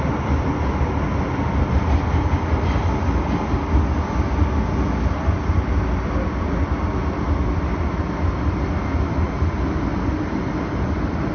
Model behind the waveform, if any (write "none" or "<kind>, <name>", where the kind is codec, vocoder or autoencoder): none